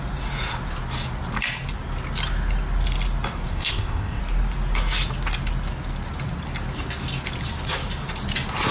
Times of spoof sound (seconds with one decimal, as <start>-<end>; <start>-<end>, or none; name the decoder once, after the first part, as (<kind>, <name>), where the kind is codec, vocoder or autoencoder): 3.5-4.2 (codec, ZipCodec)

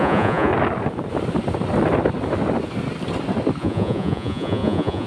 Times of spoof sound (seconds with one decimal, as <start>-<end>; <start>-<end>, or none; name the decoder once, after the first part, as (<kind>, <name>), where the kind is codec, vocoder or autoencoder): 0.0-0.5 (vocoder, Vocos); 3.6-5.1

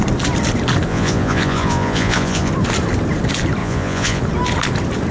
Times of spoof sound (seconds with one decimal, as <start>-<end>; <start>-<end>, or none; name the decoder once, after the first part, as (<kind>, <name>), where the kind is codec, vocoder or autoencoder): 0.9-2.5 (vocoder, Vocos); 3.6-4.2

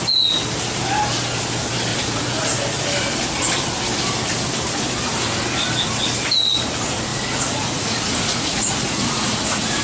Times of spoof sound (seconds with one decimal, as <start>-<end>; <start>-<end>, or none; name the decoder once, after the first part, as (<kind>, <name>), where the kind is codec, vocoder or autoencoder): 1.9-2.4 (vocoder, Vocos); 7.1-9.8

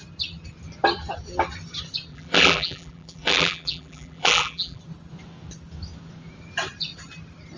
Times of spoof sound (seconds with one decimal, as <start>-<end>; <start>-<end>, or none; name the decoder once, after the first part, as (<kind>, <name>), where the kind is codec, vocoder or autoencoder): 2.1-4.8 (vocoder, BigVGAN v2)

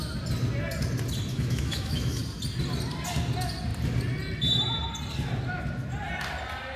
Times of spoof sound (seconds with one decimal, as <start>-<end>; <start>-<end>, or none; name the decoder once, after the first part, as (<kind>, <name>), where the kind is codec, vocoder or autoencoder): 1.3-2.2 (autoencoder, DAC-VAE)